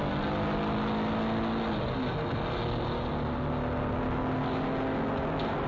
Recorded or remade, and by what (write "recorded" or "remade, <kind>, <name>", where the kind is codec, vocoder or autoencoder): recorded